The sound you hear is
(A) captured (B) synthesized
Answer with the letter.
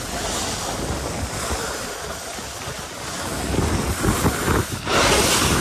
A